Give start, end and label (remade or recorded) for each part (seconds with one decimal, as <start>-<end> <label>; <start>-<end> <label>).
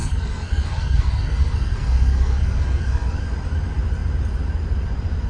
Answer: 0.0-3.2 remade; 3.2-5.3 recorded